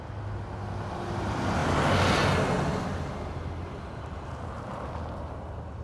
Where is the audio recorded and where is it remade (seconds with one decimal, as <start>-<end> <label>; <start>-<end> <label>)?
0.0-5.8 recorded